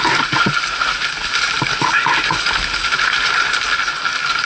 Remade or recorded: recorded